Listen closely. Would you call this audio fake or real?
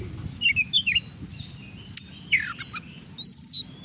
real